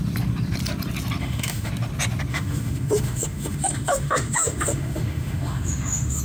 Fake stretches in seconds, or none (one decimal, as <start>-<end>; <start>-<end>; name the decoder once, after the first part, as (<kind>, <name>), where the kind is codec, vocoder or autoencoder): 1.2-1.7 (autoencoder, DAC-VAE); 2.3-6.2